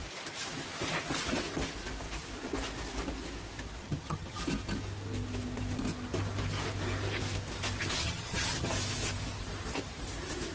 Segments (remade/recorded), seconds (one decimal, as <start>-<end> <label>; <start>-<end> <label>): 0.0-3.8 recorded; 3.8-4.4 remade; 4.4-8.0 recorded; 8.0-8.7 remade; 8.7-10.5 recorded